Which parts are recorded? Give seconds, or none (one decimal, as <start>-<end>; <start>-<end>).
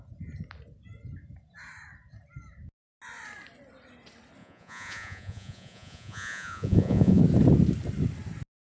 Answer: 0.0-4.4; 7.2-8.6